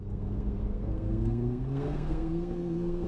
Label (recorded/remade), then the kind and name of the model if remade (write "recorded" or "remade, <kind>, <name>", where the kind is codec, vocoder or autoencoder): remade, codec, SNAC